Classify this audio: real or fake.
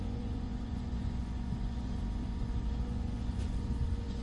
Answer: fake